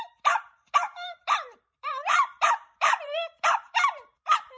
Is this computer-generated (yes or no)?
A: yes